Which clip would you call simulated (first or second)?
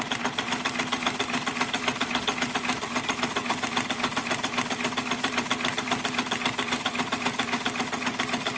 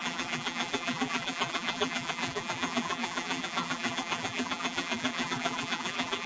second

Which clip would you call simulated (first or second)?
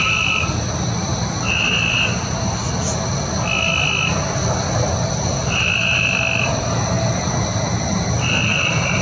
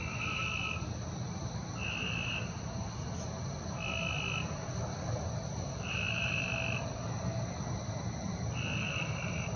second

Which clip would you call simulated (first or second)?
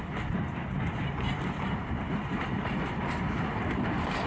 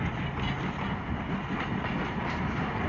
first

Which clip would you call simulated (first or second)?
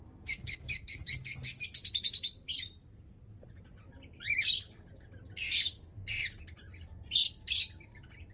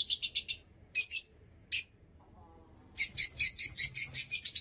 first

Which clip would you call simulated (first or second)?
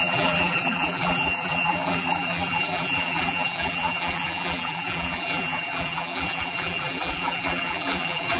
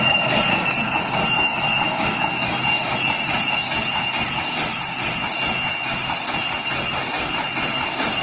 first